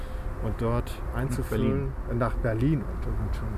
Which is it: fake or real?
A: real